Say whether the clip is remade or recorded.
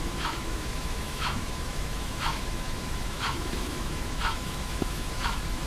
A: remade